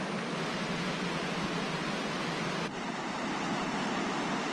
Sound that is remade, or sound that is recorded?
recorded